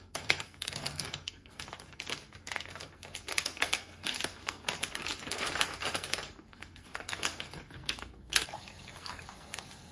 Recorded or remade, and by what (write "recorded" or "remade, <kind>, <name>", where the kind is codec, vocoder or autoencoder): remade, codec, SNAC